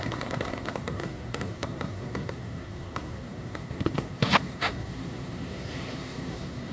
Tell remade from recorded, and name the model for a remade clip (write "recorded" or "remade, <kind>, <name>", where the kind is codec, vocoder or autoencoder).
remade, codec, SNAC